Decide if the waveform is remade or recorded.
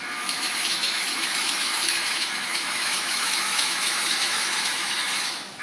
remade